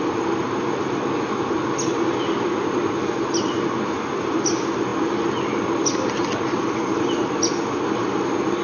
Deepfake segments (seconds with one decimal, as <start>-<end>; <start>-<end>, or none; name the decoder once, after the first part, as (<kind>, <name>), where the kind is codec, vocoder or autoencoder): none